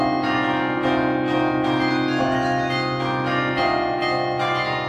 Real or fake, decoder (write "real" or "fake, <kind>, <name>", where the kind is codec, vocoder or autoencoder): real